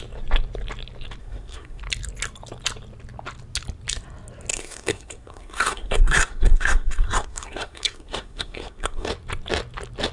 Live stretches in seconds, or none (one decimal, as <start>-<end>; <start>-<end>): 0.0-1.2; 1.8-4.5; 9.1-10.1